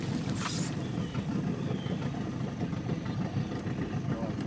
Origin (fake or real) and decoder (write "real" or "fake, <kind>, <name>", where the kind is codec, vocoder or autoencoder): real